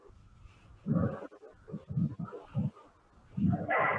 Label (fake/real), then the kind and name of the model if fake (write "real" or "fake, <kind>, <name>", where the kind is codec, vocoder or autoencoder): real